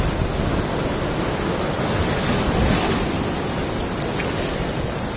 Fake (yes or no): no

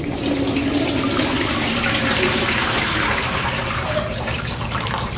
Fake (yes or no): yes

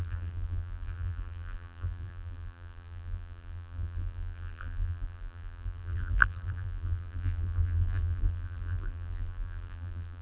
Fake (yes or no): yes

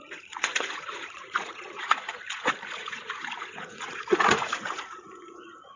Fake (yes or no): yes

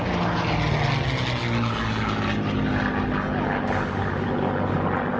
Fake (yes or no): no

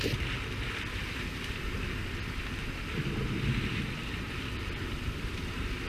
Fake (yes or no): yes